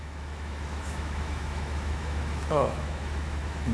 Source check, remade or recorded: remade